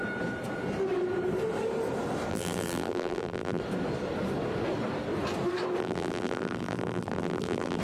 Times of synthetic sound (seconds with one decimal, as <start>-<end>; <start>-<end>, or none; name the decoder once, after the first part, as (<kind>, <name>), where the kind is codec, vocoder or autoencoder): 2.3-3.6 (vocoder, BigVGAN v2); 5.8-7.8

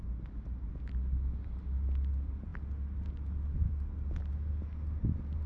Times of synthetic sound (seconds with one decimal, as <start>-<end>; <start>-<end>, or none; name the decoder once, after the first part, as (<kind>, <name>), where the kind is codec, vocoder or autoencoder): none

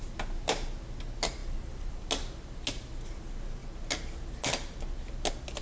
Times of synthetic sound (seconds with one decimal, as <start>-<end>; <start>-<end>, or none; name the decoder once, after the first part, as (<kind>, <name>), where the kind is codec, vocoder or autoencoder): 1.4-2.0 (vocoder, BigVGAN v2)

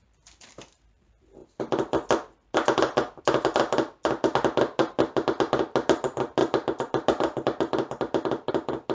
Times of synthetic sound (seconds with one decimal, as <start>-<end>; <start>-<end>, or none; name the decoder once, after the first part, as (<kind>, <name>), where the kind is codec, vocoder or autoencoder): none

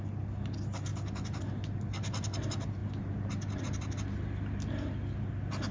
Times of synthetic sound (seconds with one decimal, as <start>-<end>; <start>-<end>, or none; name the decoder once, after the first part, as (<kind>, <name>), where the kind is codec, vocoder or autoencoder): 0.9-1.4 (vocoder, BigVGAN v2)

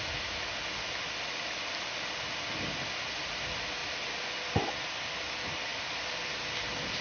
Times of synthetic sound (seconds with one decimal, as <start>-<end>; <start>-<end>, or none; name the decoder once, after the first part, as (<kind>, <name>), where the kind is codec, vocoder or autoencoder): 3.8-4.7 (vocoder, BigVGAN v2); 5.7-6.4

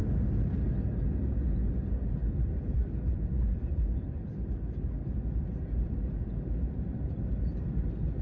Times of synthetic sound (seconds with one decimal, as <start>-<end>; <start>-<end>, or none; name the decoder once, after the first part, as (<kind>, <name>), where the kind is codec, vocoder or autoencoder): 2.2-6.5 (vocoder, BigVGAN v2)